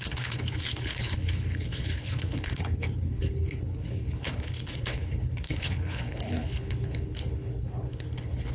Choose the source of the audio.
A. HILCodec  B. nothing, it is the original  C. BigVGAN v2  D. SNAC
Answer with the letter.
A